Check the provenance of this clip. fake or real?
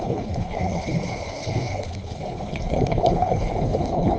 fake